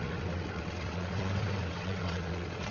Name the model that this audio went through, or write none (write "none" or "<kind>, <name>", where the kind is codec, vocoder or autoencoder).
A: vocoder, WaveNeXt